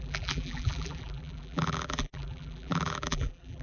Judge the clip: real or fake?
fake